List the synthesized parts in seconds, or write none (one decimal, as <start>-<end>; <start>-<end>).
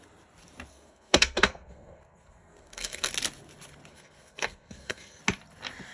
0.7-3.1; 3.9-5.2